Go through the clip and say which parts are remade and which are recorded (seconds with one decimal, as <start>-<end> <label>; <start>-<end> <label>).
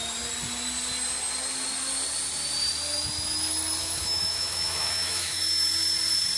0.0-3.8 recorded; 3.8-5.4 remade; 5.4-6.4 recorded